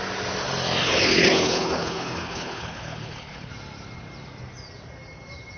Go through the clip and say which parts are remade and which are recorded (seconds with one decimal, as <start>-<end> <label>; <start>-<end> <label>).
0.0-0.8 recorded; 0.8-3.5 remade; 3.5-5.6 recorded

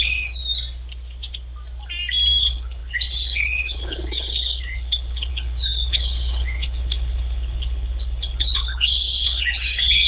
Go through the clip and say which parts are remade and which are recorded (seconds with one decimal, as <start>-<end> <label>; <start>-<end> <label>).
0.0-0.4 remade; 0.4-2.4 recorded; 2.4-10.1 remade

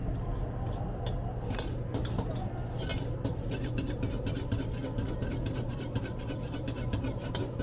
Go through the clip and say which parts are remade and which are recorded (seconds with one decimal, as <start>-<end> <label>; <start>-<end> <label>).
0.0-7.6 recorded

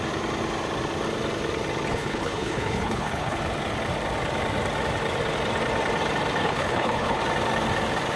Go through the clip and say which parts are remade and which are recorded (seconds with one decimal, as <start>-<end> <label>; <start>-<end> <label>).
0.0-1.9 recorded; 1.9-3.4 remade; 3.4-6.4 recorded; 6.4-7.2 remade; 7.2-8.2 recorded

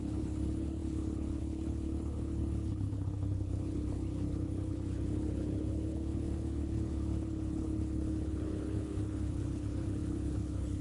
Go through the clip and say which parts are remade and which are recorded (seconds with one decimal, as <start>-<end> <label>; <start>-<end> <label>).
0.0-10.8 remade

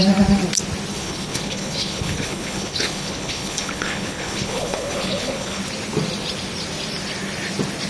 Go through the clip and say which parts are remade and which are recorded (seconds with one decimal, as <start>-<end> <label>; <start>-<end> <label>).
0.0-0.9 recorded; 0.9-5.6 remade; 5.6-7.9 recorded

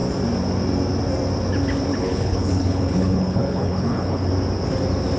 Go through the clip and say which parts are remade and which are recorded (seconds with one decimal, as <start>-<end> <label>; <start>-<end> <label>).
0.0-1.9 recorded; 1.9-4.3 remade; 4.3-5.2 recorded